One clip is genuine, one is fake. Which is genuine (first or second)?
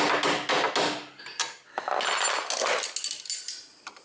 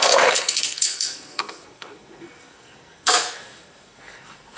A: first